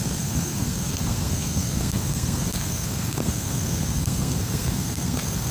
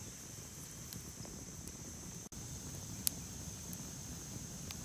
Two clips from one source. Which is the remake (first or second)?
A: first